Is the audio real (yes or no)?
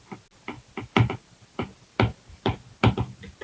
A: yes